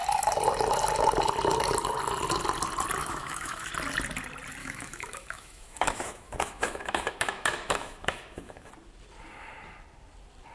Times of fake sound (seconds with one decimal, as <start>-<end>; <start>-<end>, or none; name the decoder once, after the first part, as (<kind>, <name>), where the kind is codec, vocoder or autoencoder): 3.0-3.7 (autoencoder, DAC-VAE); 4.6-8.7